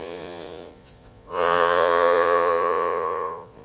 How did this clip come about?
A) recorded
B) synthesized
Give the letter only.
B